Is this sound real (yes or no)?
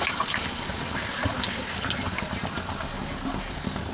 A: yes